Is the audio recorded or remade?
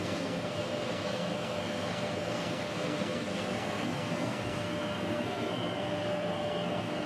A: remade